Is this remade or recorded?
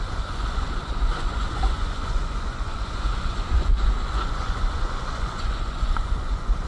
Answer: remade